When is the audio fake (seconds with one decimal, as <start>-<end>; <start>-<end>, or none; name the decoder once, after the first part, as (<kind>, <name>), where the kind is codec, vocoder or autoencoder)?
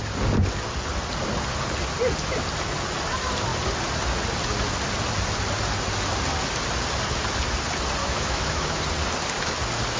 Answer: 8.0-8.8 (autoencoder, DAC-VAE)